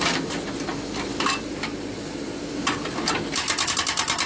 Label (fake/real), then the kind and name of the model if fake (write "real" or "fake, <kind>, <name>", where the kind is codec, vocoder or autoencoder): real